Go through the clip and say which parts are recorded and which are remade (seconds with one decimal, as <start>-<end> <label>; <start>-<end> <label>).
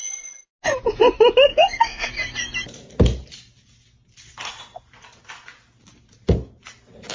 0.0-1.5 recorded; 1.5-2.1 remade; 2.1-7.1 recorded